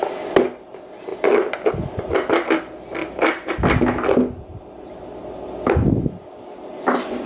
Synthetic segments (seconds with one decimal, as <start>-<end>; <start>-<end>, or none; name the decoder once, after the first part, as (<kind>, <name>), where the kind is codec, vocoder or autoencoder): 1.1-1.7 (vocoder, BigVGAN v2); 3.0-3.5; 4.5-6.0